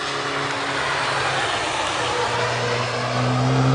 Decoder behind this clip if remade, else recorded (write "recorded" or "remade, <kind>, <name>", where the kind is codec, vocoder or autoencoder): recorded